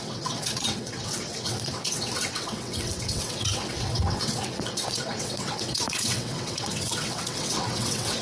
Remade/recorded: remade